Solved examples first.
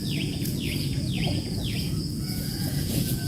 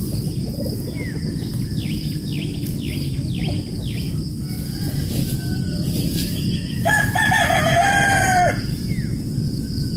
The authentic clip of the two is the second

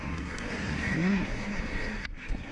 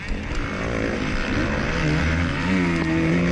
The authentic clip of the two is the second